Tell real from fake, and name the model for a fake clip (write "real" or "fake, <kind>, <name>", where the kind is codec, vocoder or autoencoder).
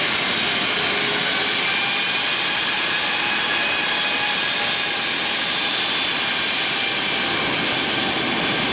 real